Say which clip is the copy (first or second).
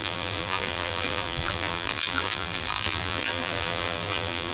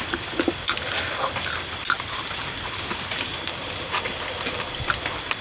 first